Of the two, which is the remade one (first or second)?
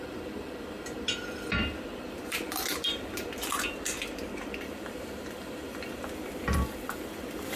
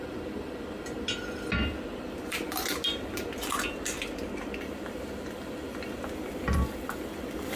first